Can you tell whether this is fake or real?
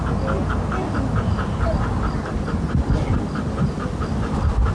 real